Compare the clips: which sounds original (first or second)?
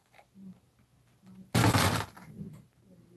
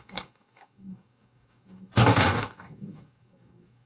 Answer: first